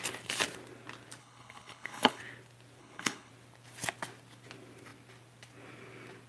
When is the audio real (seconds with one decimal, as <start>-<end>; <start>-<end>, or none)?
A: 0.0-1.2; 2.2-2.8; 3.3-6.3